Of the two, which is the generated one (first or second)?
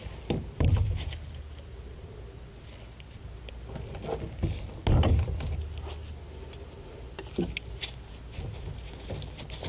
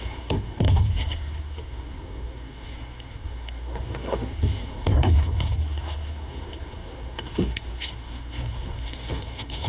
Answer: second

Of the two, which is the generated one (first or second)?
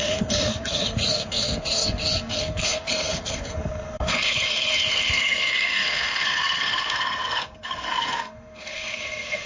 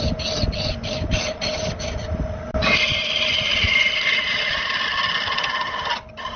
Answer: first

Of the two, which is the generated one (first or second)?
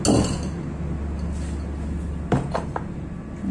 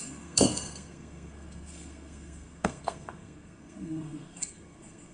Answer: second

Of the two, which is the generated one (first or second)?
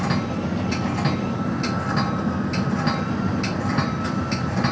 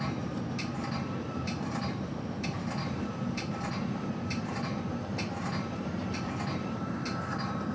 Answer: second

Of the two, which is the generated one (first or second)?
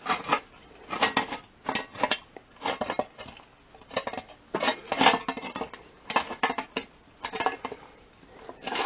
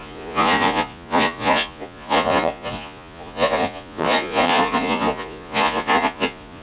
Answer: second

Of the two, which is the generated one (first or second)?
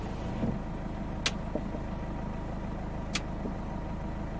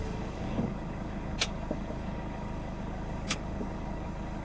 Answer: second